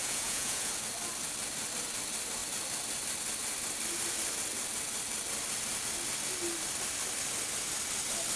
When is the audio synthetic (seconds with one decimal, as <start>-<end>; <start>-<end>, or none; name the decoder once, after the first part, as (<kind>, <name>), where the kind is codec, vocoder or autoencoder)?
0.0-0.7 (vocoder, Vocos)